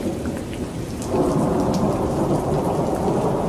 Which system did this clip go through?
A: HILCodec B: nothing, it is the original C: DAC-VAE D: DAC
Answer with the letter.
B